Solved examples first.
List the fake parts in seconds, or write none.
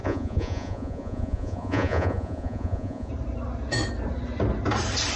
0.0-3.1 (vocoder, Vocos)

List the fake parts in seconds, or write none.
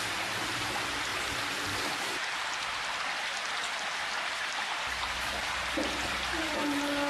none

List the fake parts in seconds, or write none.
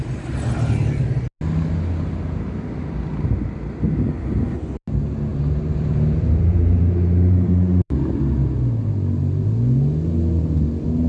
5.3-8.2 (vocoder, BigVGAN v2)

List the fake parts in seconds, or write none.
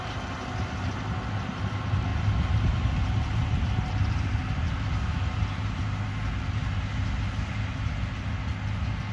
none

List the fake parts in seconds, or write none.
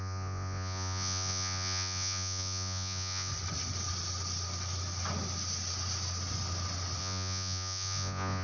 0.0-3.3 (vocoder, Vocos); 7.0-8.4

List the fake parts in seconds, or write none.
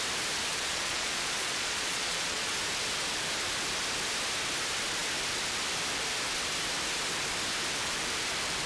0.5-2.5 (vocoder, Vocos)